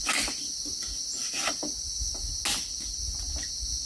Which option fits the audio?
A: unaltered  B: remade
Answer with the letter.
A